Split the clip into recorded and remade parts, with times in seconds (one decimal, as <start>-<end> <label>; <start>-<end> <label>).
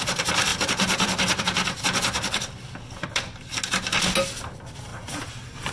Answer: 0.0-5.7 recorded